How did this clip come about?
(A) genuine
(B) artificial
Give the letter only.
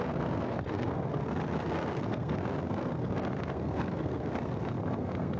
B